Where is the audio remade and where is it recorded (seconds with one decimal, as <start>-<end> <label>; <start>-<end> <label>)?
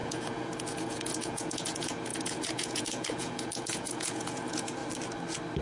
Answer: 0.0-4.8 remade; 4.8-5.6 recorded